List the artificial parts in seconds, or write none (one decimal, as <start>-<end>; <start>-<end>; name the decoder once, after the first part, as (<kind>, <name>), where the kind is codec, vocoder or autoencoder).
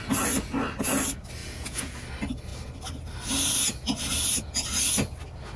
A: 1.4-2.0 (vocoder, Vocos)